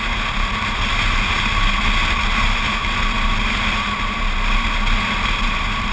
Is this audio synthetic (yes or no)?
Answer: no